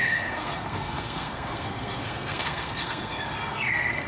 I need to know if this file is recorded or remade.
remade